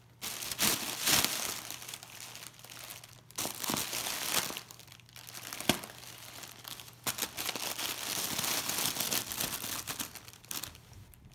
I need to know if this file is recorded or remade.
recorded